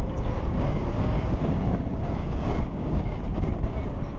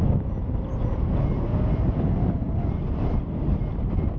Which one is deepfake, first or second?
first